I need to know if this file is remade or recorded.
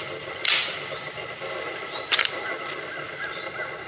recorded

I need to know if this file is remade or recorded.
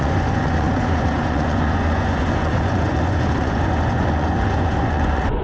remade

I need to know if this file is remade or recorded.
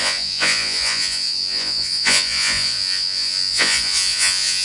remade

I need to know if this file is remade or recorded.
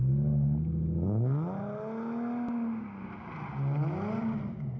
recorded